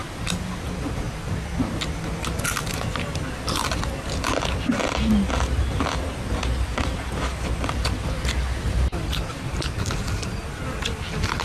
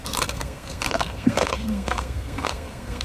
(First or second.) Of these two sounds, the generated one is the second